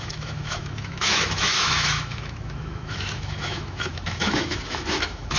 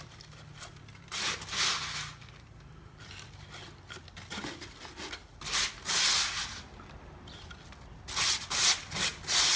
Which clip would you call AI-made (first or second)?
first